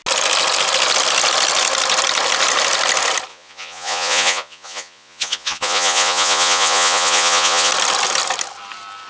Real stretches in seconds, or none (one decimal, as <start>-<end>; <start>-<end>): 0.0-3.3; 7.7-9.1